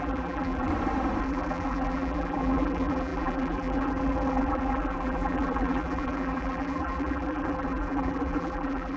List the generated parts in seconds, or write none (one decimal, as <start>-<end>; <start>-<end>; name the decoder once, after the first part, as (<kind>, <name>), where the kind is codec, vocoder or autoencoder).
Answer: 0.0-0.7 (vocoder, BigVGAN v2); 1.2-9.0